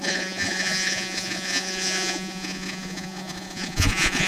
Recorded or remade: remade